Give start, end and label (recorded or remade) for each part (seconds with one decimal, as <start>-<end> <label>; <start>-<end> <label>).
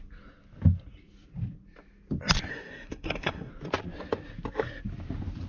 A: 0.0-2.5 recorded; 2.5-3.5 remade; 3.5-5.5 recorded